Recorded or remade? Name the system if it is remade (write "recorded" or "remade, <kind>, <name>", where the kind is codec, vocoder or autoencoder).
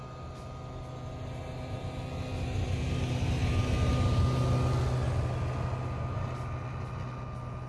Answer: recorded